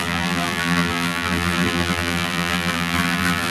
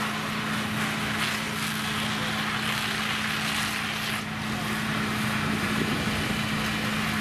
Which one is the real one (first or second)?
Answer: second